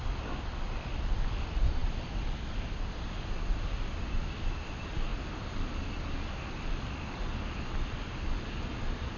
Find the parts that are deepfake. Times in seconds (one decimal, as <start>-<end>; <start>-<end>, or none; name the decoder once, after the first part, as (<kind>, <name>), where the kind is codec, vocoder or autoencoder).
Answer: none